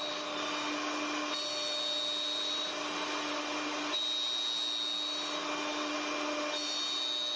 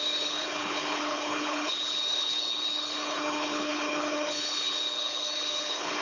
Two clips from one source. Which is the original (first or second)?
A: first